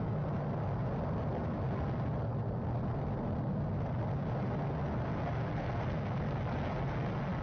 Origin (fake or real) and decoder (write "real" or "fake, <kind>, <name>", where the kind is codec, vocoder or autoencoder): real